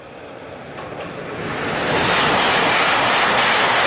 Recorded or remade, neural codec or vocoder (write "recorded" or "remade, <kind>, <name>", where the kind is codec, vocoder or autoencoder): recorded